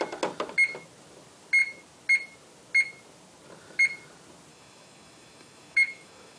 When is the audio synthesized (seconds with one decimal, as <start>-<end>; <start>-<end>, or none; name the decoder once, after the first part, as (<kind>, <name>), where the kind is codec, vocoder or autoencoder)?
4.5-6.4 (autoencoder, DAC-VAE)